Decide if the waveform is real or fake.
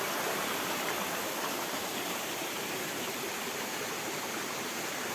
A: fake